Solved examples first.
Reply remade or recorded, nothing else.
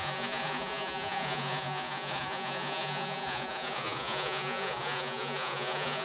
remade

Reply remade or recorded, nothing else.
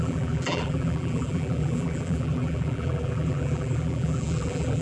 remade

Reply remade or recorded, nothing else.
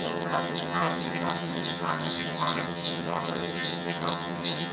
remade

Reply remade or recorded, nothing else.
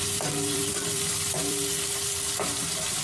remade